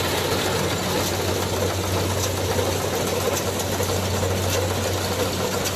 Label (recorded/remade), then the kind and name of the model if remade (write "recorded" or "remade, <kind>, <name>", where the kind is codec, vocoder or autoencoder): recorded